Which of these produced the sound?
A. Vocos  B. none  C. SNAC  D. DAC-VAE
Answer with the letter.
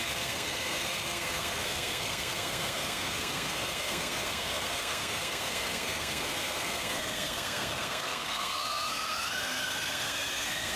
C